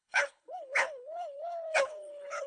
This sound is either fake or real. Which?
fake